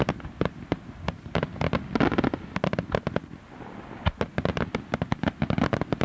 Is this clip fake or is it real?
real